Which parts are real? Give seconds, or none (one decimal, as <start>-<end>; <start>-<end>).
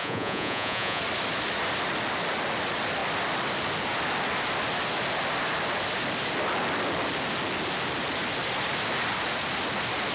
1.0-10.1